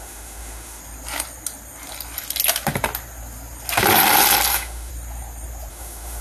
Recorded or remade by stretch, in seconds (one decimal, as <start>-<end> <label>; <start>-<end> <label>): 0.0-0.8 remade; 0.8-4.5 recorded; 4.5-4.9 remade; 4.9-5.7 recorded; 5.7-6.2 remade

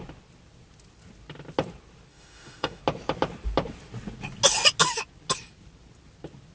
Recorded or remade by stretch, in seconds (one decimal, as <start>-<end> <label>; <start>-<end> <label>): 0.0-2.1 recorded; 2.1-2.8 remade; 2.8-6.5 recorded